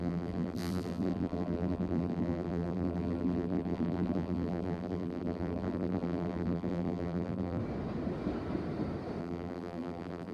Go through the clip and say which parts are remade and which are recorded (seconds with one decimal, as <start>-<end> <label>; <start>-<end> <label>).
0.0-7.6 remade; 7.6-9.2 recorded; 9.2-10.3 remade

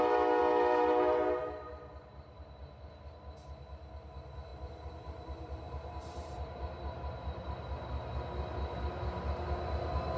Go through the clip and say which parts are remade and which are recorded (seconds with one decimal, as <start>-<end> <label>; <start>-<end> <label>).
0.0-4.5 recorded; 4.5-7.0 remade; 7.0-10.2 recorded

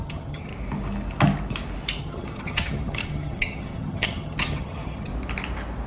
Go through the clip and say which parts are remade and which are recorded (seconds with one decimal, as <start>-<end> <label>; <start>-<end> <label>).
0.0-0.5 remade; 0.5-2.0 recorded; 2.0-5.1 remade; 5.1-5.9 recorded

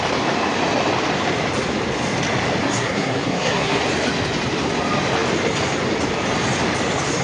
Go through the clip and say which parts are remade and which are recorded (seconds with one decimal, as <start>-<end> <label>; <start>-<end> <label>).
0.0-2.6 recorded; 2.6-3.8 remade; 3.8-7.2 recorded

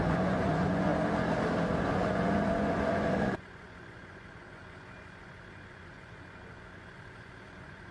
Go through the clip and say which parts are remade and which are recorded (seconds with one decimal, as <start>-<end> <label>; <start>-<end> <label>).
0.0-0.9 remade; 0.9-1.8 recorded; 1.8-7.9 remade

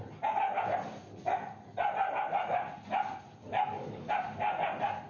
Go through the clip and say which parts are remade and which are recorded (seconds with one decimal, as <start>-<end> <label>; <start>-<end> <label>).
0.0-3.5 recorded; 3.5-4.1 remade; 4.1-5.1 recorded